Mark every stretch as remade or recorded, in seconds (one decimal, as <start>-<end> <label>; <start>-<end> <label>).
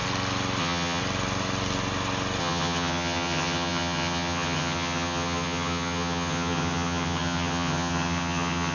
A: 0.0-0.6 recorded; 0.6-1.0 remade; 1.0-2.4 recorded; 2.4-8.7 remade